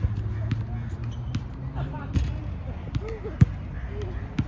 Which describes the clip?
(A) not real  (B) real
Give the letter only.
B